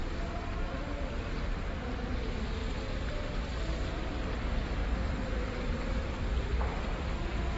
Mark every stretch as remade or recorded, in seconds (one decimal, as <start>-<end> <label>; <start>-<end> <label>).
0.0-4.8 recorded; 4.8-7.1 remade; 7.1-7.6 recorded